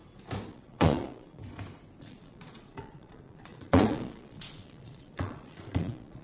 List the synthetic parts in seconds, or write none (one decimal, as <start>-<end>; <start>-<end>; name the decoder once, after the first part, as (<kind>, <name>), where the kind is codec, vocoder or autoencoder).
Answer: 0.5-1.4 (vocoder, Vocos); 2.0-6.2